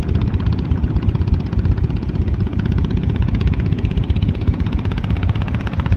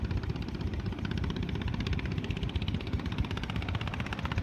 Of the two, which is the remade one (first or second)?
first